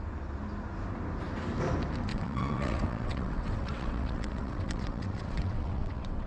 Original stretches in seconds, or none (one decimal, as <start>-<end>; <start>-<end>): 0.0-2.1